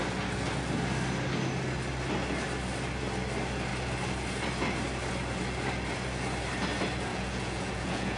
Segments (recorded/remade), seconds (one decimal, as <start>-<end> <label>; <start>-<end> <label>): 0.0-7.1 recorded; 7.1-8.2 remade